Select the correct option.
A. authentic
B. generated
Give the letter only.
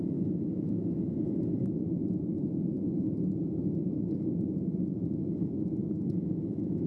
B